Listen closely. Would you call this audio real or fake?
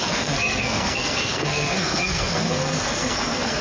fake